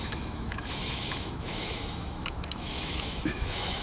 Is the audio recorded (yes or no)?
no